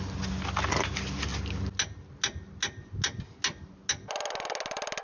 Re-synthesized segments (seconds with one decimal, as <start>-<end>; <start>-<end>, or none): none